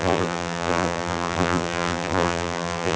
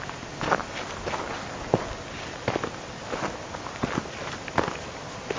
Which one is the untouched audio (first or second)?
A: second